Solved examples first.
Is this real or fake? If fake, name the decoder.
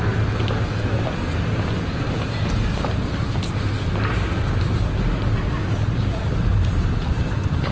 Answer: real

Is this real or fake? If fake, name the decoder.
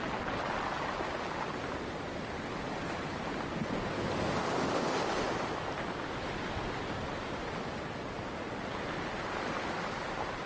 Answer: real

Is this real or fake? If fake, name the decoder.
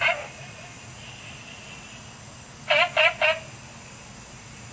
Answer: real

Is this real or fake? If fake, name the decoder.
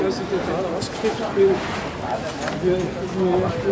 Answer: real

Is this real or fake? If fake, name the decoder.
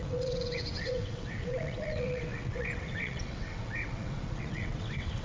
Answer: fake, vocoder, WaveNeXt